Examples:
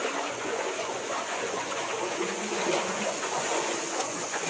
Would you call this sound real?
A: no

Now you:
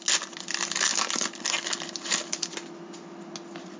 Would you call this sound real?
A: yes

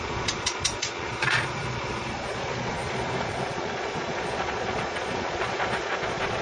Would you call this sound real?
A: no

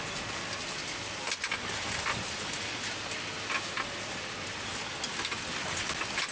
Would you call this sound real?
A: yes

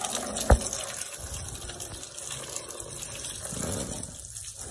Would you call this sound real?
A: yes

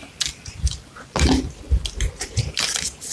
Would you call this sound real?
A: yes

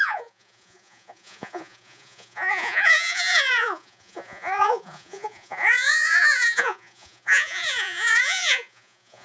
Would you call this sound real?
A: no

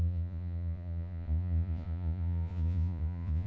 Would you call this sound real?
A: no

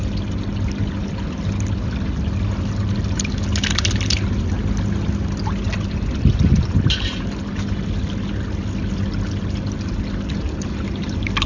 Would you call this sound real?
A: yes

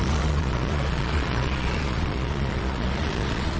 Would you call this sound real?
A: no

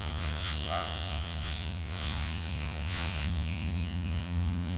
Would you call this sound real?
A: no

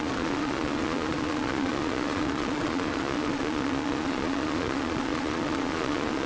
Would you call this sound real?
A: no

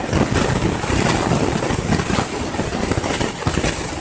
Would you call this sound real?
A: yes